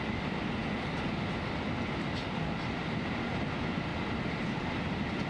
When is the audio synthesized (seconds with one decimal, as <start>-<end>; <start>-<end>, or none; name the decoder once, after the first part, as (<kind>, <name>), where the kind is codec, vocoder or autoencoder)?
none